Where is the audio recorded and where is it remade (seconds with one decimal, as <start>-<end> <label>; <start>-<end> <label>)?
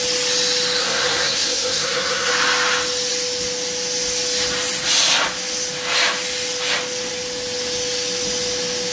0.0-0.8 recorded; 0.8-2.3 remade; 2.3-8.9 recorded